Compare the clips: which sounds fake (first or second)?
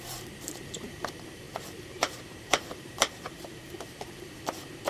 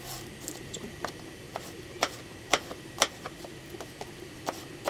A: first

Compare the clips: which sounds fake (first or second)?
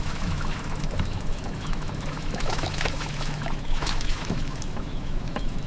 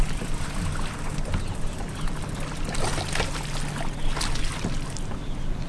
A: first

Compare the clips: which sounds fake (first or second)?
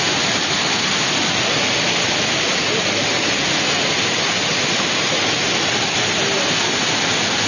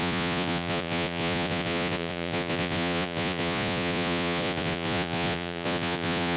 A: second